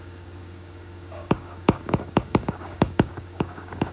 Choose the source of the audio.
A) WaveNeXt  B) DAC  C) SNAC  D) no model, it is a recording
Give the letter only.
B